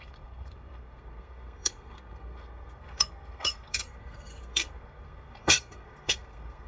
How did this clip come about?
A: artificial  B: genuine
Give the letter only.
A